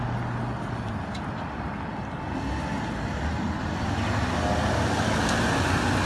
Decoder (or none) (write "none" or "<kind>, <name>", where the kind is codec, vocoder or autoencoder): none